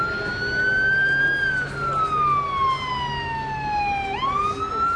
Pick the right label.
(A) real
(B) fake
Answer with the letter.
A